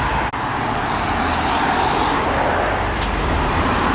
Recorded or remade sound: recorded